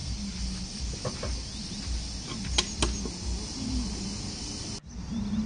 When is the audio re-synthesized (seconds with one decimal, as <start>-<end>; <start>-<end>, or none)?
none